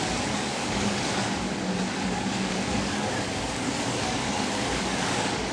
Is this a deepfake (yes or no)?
yes